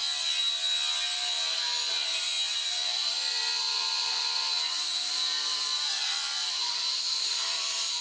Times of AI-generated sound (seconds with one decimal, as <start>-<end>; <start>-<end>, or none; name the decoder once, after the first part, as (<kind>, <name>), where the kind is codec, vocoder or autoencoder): 4.8-8.0 (vocoder, BigVGAN v2)